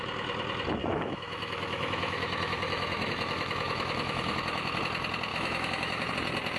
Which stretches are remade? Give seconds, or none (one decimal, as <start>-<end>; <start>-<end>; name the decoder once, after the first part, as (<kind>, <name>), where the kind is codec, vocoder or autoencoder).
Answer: 0.8-4.8 (autoencoder, DAC-VAE); 5.3-6.1